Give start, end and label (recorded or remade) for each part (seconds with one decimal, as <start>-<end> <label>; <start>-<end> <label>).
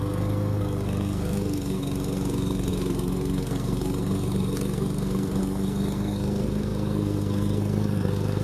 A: 0.0-8.4 remade